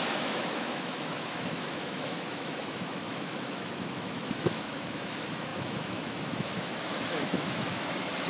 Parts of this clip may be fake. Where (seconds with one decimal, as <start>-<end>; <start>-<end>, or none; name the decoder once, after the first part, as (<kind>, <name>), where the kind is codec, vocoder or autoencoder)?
0.0-8.3 (autoencoder, DAC-VAE)